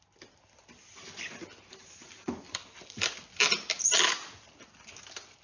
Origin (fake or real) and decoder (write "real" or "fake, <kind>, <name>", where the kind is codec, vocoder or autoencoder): real